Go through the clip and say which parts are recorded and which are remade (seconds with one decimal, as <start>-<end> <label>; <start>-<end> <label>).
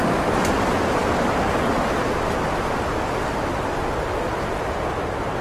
0.0-5.4 recorded